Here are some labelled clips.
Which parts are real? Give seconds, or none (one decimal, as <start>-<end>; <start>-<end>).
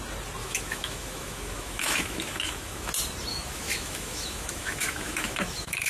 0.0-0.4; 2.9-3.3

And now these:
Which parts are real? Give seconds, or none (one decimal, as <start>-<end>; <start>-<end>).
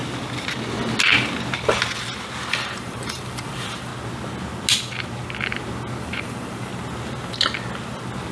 0.0-2.5; 3.9-6.0; 6.7-8.3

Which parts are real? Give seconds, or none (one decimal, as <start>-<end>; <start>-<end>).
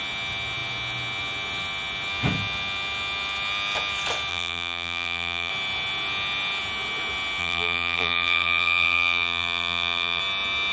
0.0-4.3; 5.5-7.4; 10.2-10.7